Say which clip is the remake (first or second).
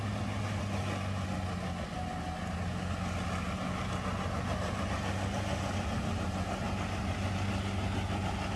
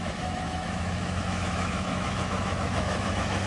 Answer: second